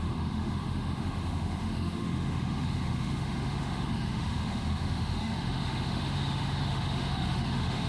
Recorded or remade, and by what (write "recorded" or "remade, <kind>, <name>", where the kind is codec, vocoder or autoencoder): remade, autoencoder, DAC-VAE